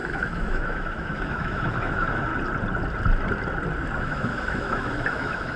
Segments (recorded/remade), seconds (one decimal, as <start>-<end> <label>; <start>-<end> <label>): 0.0-2.3 remade; 2.3-4.0 recorded; 4.0-5.6 remade